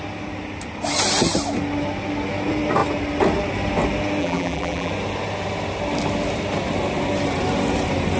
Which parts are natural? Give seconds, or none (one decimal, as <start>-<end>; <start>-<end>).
0.0-4.2; 4.9-8.2